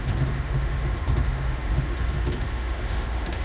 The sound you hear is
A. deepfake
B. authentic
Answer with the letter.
A